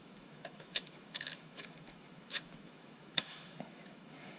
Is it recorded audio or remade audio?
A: remade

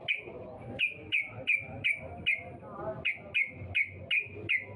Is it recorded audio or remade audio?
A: recorded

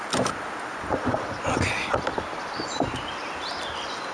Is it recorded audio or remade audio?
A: recorded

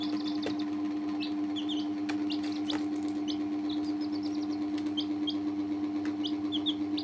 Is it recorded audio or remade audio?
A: recorded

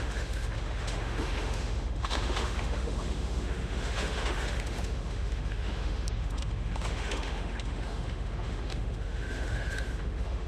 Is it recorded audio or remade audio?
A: remade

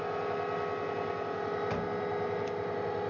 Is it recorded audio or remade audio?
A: recorded